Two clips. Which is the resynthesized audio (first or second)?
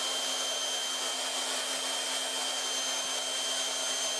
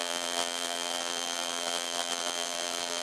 second